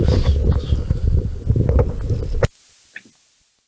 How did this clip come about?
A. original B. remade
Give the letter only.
A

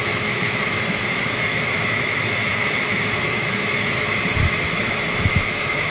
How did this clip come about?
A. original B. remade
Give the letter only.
B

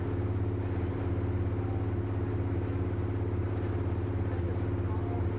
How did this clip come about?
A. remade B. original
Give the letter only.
B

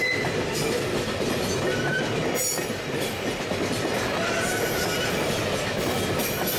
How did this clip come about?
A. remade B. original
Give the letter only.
B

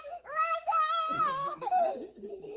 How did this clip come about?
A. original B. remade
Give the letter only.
B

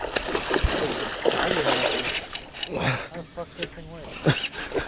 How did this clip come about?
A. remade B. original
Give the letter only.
B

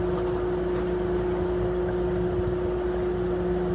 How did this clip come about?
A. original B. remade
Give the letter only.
A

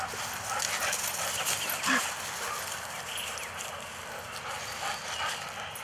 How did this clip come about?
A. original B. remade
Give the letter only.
A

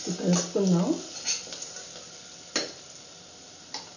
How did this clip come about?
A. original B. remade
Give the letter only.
A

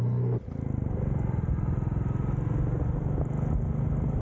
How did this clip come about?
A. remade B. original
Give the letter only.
B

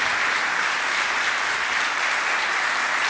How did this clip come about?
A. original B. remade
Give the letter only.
A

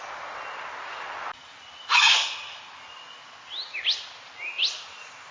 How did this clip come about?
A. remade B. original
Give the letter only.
B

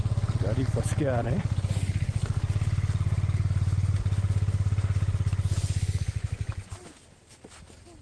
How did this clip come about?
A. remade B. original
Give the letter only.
B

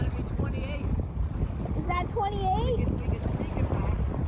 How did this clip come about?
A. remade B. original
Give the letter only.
B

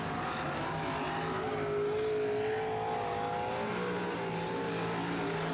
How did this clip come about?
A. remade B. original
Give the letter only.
B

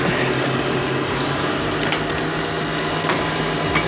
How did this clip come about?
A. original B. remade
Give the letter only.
A